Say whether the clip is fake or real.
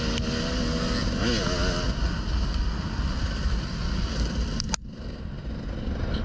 real